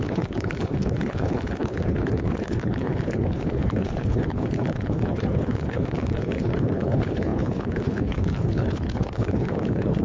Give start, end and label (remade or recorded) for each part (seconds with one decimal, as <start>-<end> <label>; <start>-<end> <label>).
0.0-10.0 remade